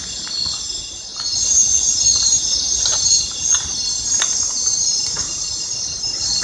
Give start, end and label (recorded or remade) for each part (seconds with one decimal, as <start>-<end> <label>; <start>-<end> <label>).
0.0-3.7 recorded; 3.7-6.4 remade